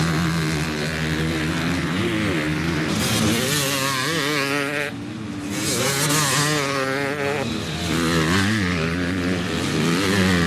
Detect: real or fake real